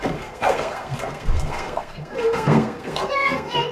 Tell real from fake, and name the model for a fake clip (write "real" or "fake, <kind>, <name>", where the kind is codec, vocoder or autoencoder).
fake, codec, SNAC